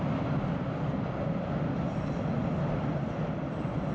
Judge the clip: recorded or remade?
remade